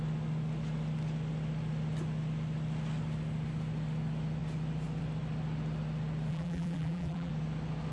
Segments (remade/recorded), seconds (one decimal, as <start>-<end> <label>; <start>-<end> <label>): 0.0-6.3 recorded; 6.3-7.3 remade; 7.3-7.9 recorded